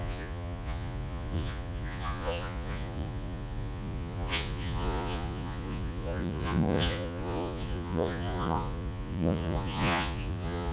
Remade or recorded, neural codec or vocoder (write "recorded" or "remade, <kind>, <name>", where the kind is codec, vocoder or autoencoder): remade, vocoder, Vocos